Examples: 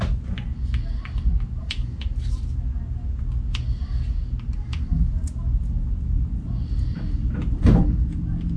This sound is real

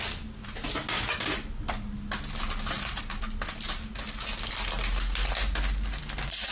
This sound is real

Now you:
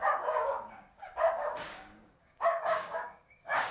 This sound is fake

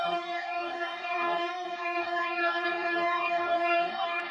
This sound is fake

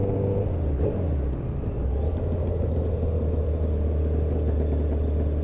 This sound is real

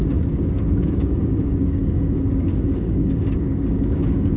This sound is fake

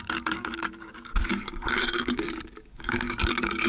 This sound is fake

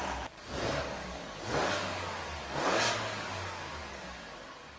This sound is fake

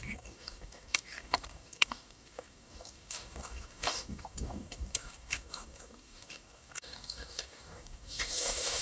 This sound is fake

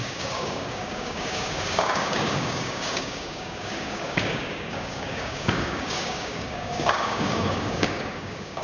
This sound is fake